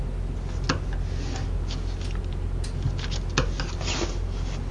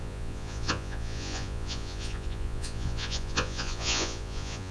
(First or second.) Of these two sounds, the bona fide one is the first